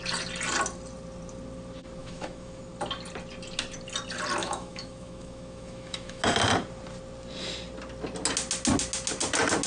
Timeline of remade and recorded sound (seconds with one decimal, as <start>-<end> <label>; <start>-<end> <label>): 0.0-2.0 recorded; 2.0-2.6 remade; 2.6-4.4 recorded; 4.4-6.2 remade; 6.2-9.7 recorded